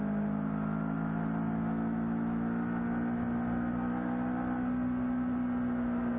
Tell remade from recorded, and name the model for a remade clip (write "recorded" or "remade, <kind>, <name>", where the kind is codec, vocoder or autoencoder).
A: recorded